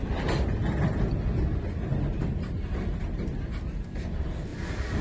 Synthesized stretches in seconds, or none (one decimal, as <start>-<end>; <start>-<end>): none